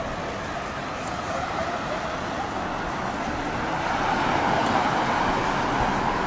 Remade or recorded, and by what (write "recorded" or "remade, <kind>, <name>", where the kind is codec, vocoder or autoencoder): recorded